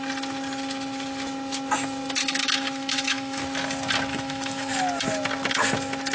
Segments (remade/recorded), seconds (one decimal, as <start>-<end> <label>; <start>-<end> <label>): 0.0-2.2 recorded; 2.2-3.4 remade; 3.4-4.1 recorded; 4.1-4.7 remade; 4.7-6.1 recorded